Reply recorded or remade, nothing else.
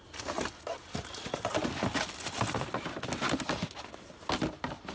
recorded